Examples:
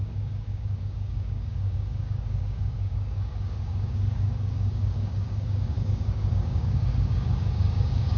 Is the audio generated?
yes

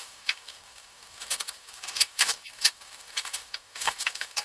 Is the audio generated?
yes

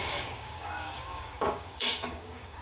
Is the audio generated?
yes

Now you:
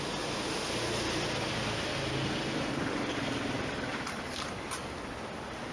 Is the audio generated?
no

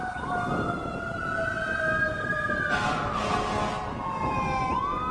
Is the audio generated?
no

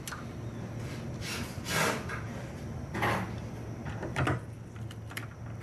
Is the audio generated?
no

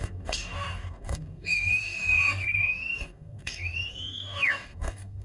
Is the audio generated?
yes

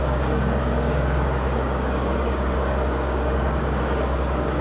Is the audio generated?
yes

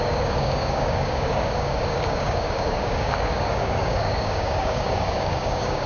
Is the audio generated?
yes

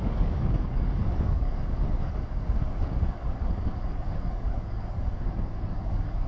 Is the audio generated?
yes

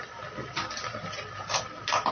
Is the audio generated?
no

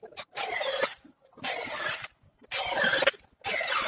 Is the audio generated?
no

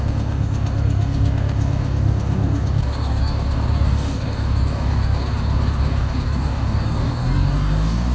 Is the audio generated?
yes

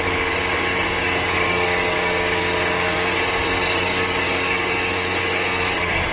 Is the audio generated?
yes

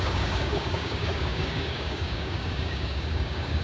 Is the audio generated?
yes